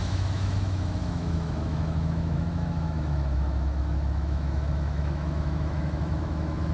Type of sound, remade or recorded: remade